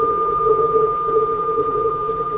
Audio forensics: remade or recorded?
remade